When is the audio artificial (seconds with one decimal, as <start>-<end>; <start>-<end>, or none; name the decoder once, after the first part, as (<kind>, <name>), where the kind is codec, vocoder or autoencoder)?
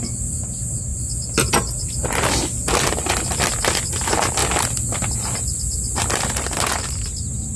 none